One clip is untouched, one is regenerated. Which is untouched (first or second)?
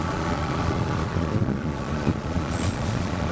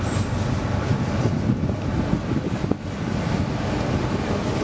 second